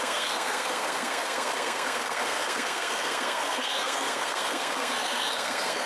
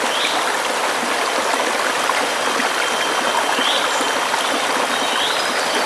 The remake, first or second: first